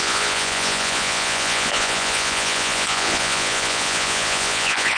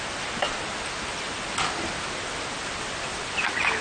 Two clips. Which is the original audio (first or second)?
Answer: second